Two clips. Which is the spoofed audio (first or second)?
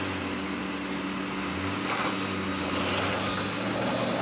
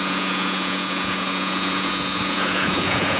second